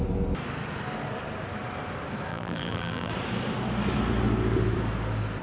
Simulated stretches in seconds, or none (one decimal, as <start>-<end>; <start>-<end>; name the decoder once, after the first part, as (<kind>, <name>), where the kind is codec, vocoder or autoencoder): 2.3-3.1 (vocoder, BigVGAN v2)